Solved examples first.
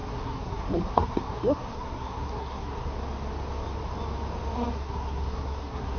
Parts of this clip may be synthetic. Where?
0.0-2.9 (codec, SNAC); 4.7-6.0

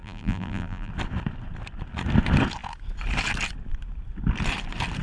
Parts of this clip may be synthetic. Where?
0.0-0.9 (vocoder, BigVGAN v2)

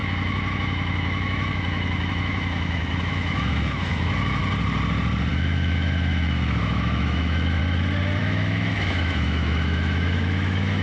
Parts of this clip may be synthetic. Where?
0.0-4.4 (autoencoder, DAC-VAE); 5.3-7.6; 8.2-10.8